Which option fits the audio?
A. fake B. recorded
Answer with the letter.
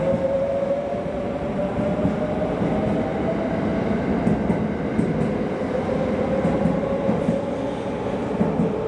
B